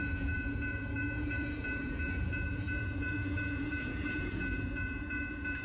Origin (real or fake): fake